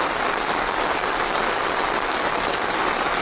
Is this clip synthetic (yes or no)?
no